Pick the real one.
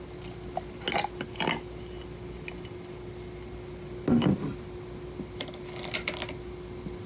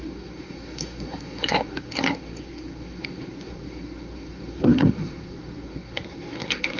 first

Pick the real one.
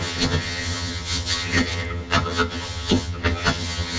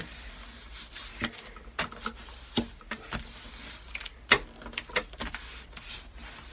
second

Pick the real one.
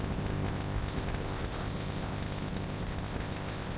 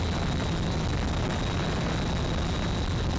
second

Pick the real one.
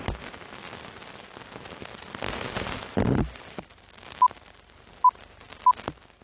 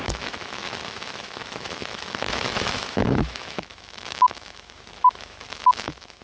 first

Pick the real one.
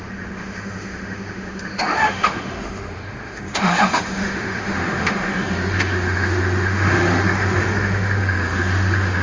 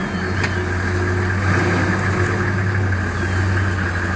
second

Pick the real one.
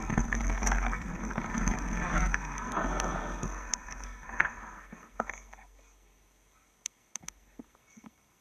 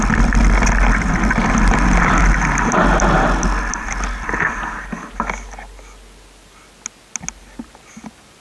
second